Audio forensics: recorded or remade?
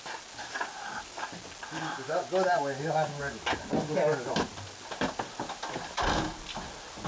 recorded